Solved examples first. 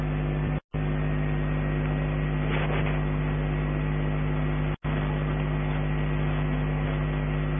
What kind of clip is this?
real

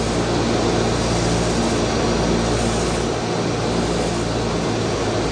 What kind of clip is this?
real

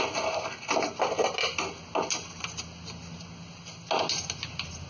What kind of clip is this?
real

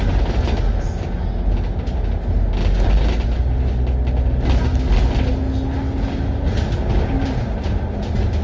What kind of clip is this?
real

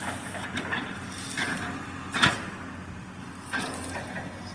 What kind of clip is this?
real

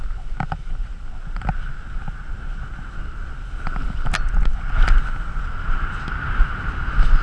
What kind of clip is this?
real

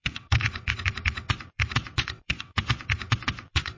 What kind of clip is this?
fake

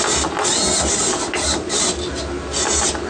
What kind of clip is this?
real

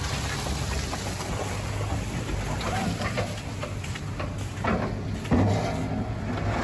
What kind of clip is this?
real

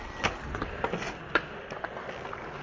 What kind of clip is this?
real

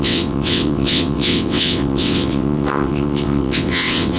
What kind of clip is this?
fake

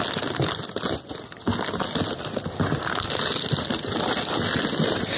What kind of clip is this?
real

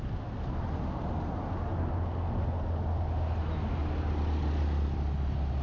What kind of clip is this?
real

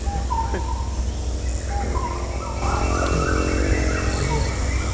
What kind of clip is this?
real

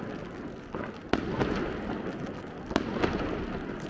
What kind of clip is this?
real